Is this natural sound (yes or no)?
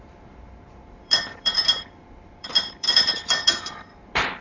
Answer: no